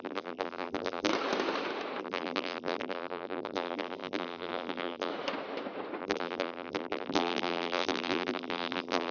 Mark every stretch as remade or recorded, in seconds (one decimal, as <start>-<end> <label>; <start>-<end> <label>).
0.0-1.1 remade; 1.1-2.0 recorded; 2.0-5.1 remade; 5.1-6.0 recorded; 6.0-9.1 remade